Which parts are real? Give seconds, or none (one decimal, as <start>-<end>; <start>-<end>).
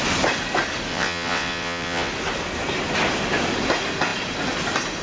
0.0-0.9; 2.1-5.0